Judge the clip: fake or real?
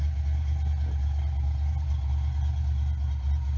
real